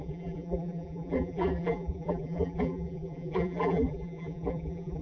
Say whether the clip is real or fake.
fake